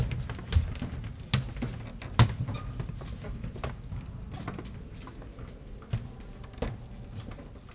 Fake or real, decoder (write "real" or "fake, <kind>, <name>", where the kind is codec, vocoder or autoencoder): real